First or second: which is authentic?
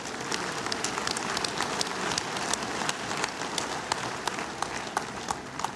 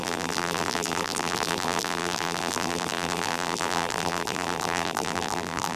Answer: first